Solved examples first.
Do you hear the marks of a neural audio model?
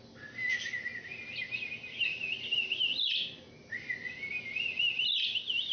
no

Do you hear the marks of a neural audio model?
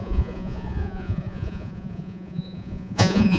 yes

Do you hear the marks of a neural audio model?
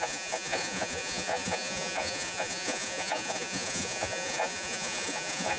yes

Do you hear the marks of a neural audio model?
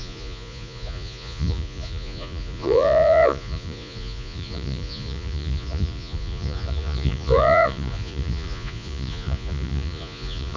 yes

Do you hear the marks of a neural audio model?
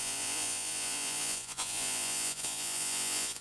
yes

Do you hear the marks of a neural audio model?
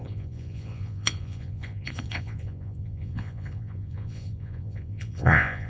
yes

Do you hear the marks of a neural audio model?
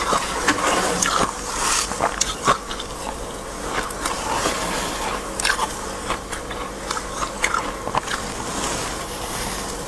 no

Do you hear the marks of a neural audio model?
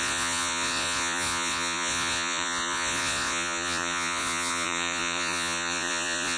yes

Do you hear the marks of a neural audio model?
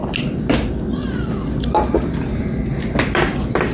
no